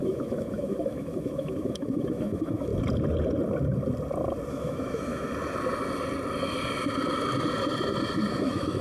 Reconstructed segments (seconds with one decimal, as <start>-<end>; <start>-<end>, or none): 0.0-2.7; 4.5-5.3; 8.4-8.8